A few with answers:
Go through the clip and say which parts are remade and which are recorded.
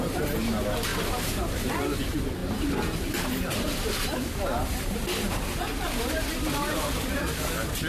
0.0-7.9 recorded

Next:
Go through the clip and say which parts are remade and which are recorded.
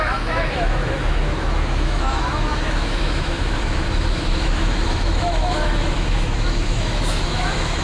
0.0-7.8 remade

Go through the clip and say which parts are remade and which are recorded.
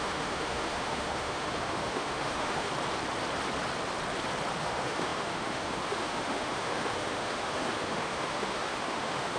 0.0-2.7 remade; 2.7-4.6 recorded; 4.6-9.4 remade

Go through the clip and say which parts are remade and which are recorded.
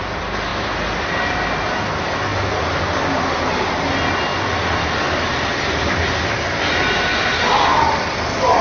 0.0-8.6 recorded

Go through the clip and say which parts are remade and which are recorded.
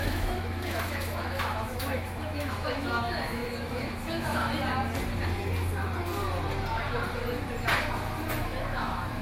0.0-4.4 remade; 4.4-8.3 recorded; 8.3-9.2 remade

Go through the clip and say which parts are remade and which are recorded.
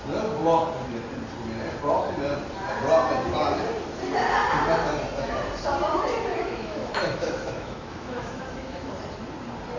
0.0-6.3 recorded; 6.3-8.9 remade; 8.9-9.8 recorded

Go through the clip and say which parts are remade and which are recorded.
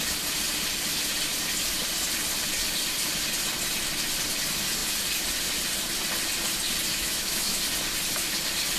0.0-6.9 recorded; 6.9-7.6 remade; 7.6-8.8 recorded